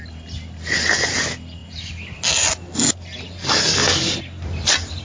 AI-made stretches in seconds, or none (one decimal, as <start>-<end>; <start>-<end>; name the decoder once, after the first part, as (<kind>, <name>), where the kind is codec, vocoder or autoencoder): none

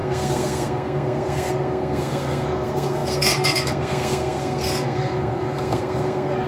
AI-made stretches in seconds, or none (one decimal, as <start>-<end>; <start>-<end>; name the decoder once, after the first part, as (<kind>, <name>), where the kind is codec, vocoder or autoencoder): 0.0-6.5 (codec, SNAC)